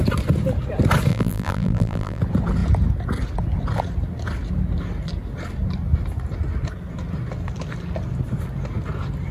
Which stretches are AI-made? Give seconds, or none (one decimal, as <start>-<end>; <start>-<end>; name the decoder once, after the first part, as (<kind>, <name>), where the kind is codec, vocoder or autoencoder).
1.1-2.2 (vocoder, BigVGAN v2)